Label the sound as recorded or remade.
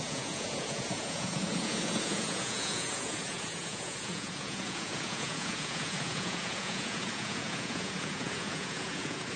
remade